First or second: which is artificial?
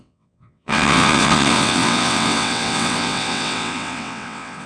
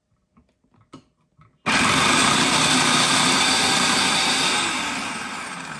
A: first